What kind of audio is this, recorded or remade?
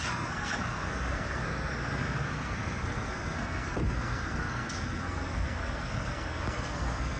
remade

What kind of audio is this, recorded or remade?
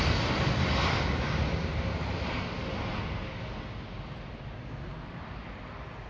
recorded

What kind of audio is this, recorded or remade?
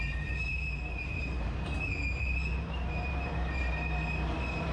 remade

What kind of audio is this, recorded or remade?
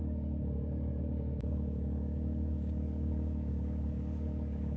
remade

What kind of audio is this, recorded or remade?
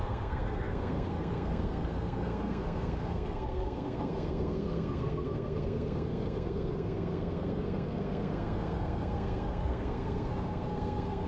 remade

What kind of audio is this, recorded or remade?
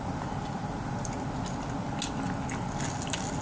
recorded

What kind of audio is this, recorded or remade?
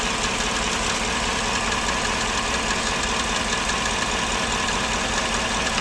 recorded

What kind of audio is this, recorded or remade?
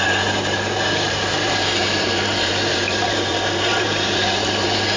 remade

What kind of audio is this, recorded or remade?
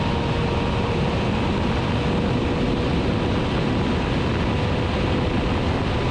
recorded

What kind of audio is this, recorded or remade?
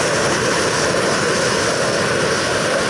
recorded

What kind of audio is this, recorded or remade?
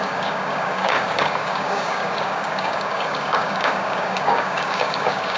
remade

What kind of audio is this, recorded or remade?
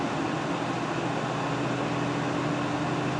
recorded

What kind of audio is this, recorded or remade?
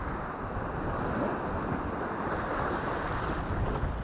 recorded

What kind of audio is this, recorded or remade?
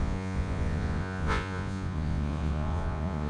remade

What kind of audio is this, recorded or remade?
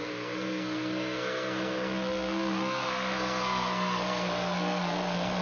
remade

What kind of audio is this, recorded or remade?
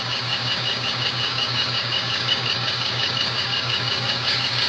remade